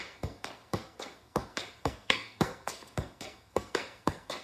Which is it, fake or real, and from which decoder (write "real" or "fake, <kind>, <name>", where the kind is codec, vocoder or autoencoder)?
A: fake, codec, SNAC